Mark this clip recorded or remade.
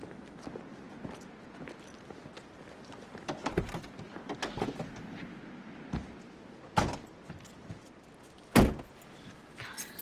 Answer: recorded